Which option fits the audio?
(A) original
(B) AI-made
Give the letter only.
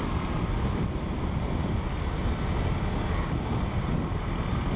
A